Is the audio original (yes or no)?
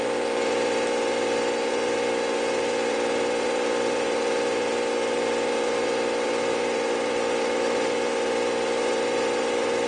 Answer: no